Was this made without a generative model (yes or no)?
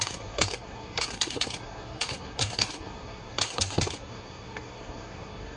no